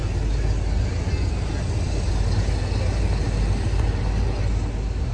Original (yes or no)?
yes